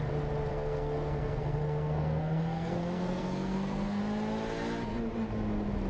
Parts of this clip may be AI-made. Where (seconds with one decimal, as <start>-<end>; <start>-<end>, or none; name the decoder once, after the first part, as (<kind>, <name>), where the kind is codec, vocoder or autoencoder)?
0.5-4.0 (codec, SNAC)